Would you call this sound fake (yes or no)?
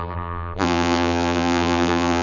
yes